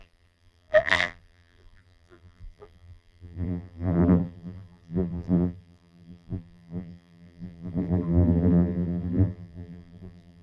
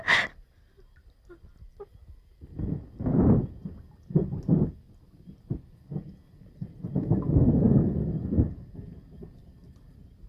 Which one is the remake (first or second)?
first